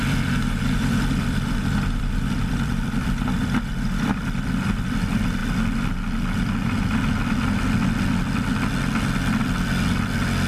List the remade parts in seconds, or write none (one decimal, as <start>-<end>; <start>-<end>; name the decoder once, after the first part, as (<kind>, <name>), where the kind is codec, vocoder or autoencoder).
0.0-5.4 (vocoder, BigVGAN v2)